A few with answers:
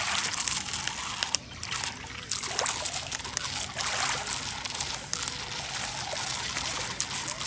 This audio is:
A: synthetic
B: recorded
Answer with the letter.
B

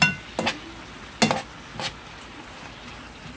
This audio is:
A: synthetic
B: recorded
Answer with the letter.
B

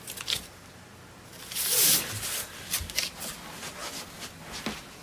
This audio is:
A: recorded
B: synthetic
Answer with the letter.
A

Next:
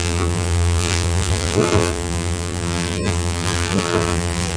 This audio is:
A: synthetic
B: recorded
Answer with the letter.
A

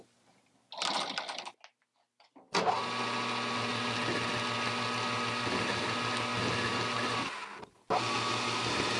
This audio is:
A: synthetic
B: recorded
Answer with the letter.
B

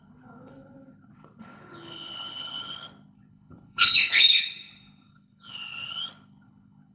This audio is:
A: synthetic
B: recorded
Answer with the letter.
A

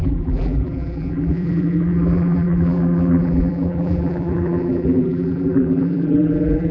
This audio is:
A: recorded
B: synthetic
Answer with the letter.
B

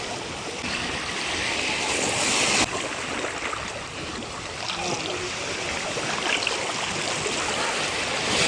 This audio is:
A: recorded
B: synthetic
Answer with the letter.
A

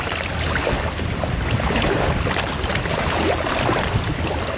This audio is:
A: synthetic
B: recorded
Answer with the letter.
A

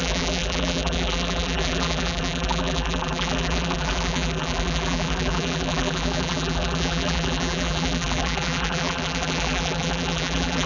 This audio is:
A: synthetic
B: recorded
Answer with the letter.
A